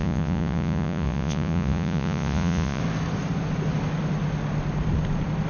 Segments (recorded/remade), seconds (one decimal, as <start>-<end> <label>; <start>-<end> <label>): 0.0-2.8 remade; 2.8-5.5 recorded